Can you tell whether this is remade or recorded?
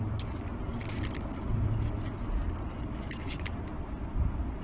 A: recorded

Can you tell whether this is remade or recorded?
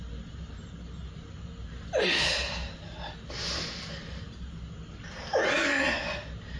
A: recorded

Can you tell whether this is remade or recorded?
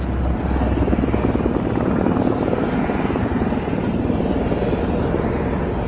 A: recorded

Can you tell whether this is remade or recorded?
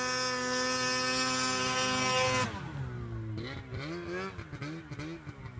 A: recorded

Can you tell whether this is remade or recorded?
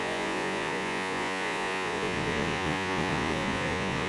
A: remade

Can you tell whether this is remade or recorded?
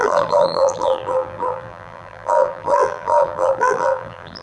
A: remade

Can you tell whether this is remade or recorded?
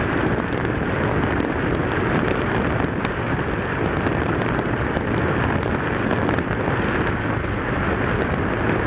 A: recorded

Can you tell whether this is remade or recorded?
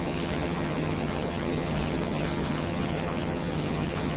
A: remade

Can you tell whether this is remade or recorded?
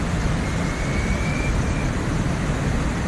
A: recorded